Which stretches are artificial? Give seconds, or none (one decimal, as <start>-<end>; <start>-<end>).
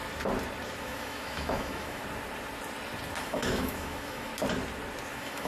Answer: 0.8-2.0; 3.2-4.3; 5.1-5.5